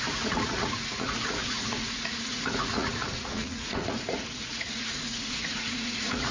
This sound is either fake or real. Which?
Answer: fake